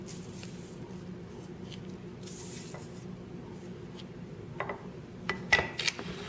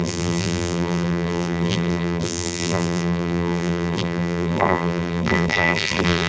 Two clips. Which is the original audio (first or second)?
first